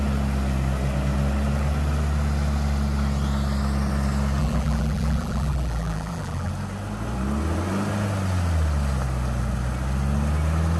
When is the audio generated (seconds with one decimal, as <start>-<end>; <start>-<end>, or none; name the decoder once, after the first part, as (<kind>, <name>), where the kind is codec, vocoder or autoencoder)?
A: 4.4-6.5 (vocoder, BigVGAN v2)